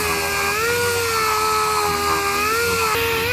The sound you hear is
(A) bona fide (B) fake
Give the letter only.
A